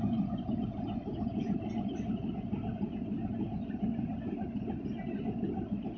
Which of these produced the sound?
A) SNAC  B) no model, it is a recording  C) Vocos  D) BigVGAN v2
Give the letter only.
B